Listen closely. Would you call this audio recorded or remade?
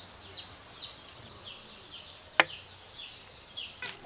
recorded